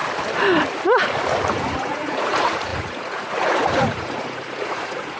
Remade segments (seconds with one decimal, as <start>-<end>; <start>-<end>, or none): 1.5-5.2

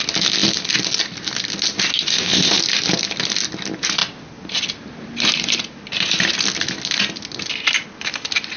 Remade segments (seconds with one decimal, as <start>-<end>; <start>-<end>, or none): 2.1-2.6

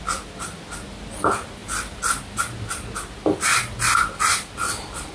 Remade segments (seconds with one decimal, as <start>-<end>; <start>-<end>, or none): 1.6-2.4; 3.5-5.1

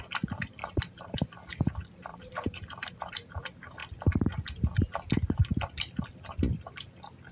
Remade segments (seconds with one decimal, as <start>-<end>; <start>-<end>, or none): 0.6-1.3; 2.1-3.1

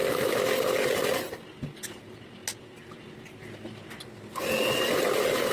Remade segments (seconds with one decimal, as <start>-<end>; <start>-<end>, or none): none